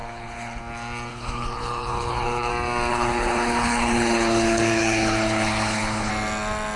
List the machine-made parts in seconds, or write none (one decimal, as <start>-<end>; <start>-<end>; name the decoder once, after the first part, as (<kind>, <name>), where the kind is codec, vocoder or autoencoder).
0.0-0.6 (codec, HILCodec); 1.1-2.5; 2.9-6.1